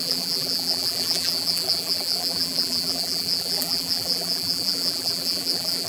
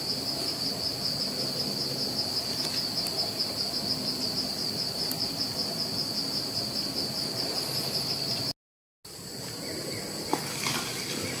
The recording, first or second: second